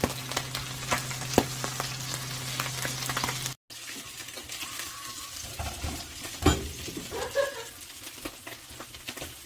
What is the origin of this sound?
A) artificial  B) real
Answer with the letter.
B